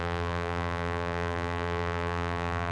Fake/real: fake